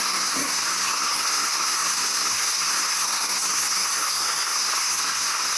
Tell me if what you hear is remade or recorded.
remade